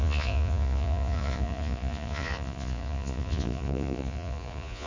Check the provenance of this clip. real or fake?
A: fake